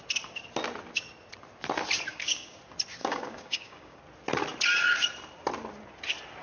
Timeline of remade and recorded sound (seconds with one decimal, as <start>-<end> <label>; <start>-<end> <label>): 0.0-2.1 recorded; 2.1-2.6 remade; 2.6-3.0 recorded; 3.0-4.0 remade; 4.0-6.4 recorded